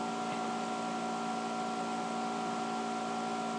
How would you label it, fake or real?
real